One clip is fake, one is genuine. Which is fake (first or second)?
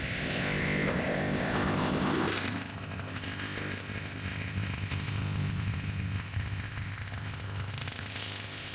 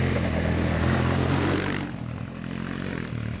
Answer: first